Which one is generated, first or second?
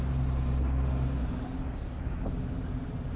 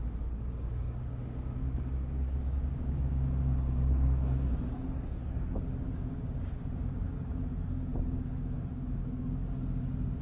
second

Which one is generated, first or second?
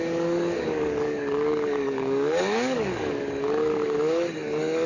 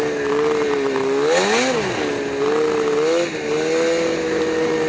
first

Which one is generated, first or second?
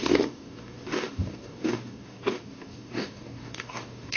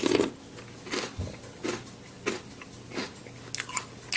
first